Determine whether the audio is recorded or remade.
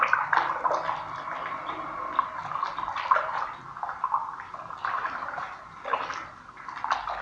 recorded